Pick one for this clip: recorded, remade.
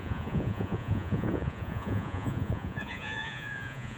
remade